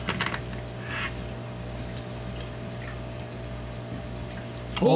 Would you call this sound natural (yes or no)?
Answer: yes